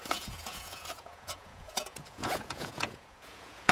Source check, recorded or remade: remade